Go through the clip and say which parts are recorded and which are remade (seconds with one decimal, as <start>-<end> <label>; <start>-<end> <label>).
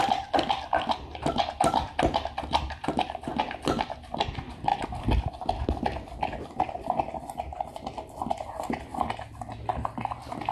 0.0-10.5 recorded